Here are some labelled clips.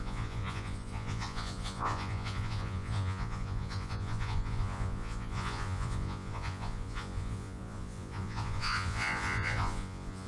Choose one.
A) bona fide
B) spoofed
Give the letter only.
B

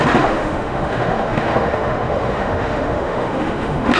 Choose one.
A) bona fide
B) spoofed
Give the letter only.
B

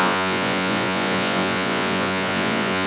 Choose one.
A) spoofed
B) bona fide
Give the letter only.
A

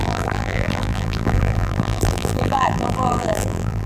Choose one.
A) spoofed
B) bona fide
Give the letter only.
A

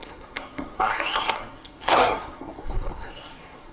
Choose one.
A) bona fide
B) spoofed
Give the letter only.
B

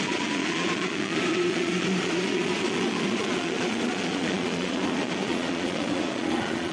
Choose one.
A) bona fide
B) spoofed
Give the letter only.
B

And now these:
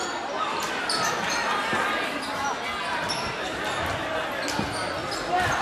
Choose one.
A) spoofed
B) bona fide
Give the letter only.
B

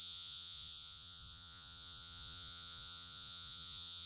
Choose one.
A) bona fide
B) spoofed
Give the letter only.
B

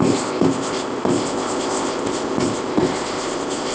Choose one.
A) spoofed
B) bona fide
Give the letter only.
A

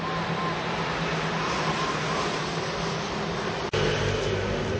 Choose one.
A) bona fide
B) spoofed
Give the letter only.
A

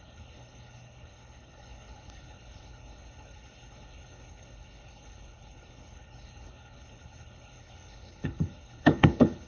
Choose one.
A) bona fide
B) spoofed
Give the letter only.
B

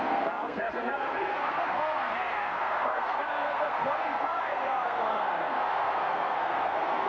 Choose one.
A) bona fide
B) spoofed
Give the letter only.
B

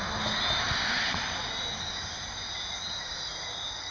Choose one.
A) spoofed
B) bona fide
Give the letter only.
B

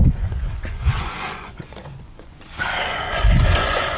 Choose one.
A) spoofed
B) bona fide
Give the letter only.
A